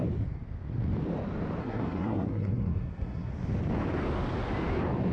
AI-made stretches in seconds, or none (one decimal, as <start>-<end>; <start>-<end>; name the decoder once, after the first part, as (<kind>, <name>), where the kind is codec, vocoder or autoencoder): 1.6-3.3 (codec, SNAC)